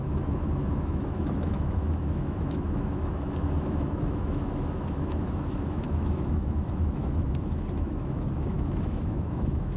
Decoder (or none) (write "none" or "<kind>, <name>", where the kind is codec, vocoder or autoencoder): autoencoder, DAC-VAE